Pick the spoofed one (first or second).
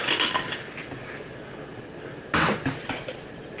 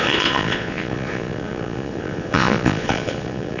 second